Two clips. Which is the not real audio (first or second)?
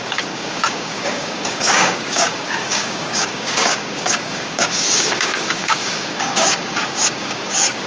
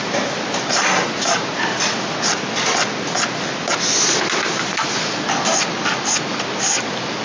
first